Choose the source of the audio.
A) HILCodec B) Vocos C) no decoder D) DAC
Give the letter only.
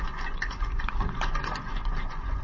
B